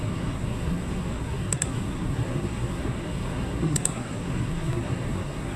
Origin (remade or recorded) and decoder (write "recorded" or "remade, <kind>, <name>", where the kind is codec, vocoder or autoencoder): remade, codec, SNAC